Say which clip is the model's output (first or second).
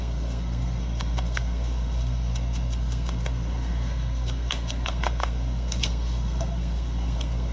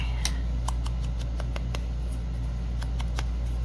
first